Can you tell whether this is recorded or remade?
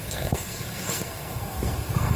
remade